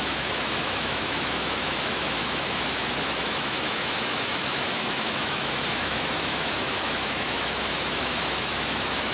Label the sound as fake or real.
fake